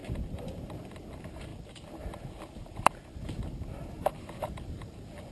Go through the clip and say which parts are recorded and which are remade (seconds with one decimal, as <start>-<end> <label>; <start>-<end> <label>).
0.0-5.3 recorded